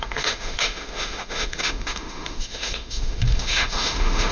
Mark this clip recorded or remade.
remade